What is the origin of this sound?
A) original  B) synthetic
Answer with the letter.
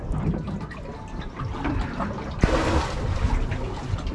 A